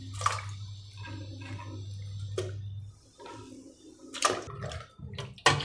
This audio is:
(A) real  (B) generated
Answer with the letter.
A